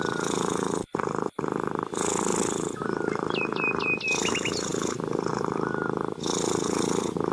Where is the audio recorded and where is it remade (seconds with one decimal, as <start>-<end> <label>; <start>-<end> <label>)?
0.0-2.3 recorded; 2.3-4.0 remade; 4.0-7.3 recorded